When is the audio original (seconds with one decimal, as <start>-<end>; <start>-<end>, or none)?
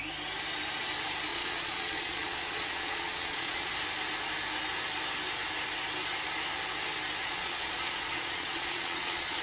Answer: 0.0-1.3; 3.7-7.2